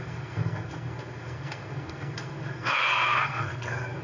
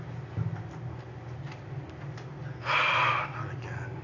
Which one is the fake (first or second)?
first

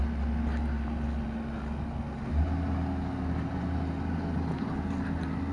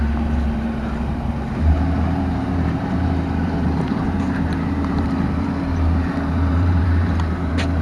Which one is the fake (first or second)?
second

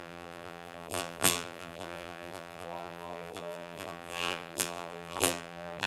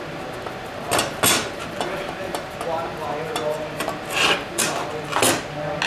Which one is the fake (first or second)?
first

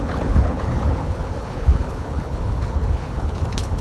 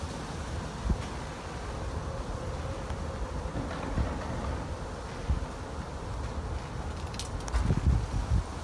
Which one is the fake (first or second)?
first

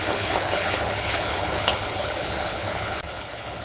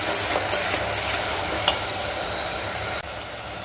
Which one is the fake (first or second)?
first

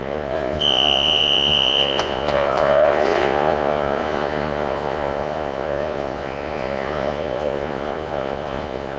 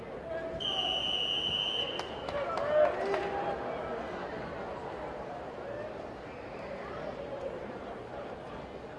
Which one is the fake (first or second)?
first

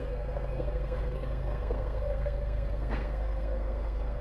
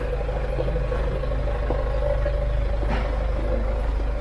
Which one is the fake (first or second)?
first